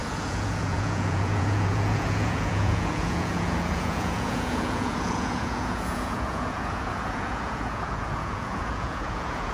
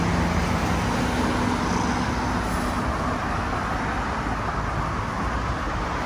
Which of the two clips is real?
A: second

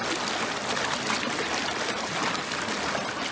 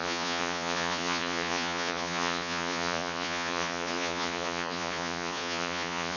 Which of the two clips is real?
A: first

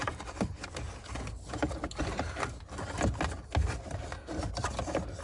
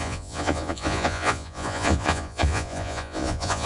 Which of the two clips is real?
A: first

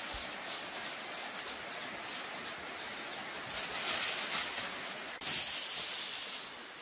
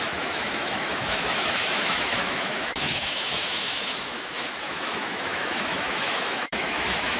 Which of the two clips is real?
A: first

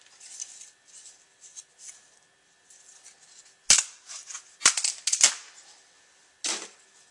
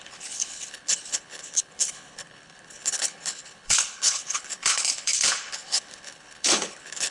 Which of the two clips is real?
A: first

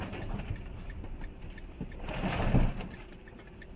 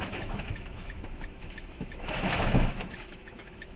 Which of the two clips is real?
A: first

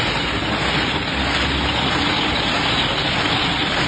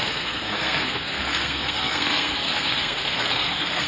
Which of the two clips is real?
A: first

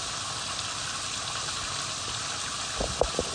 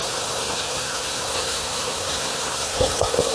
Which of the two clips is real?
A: first